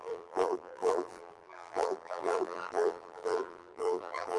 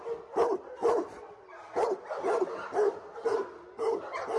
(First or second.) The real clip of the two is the second